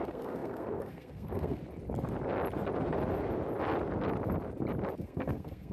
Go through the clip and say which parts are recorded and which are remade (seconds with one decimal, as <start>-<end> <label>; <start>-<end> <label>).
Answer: 0.0-1.6 remade; 1.6-5.0 recorded; 5.0-5.7 remade